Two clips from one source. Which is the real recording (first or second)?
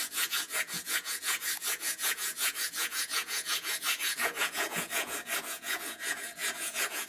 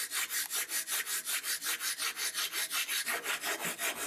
second